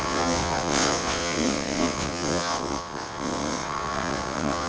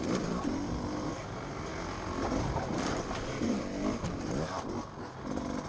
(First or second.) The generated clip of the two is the first